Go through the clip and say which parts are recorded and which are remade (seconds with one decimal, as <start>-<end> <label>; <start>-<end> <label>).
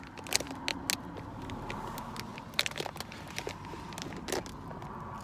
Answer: 0.0-5.2 recorded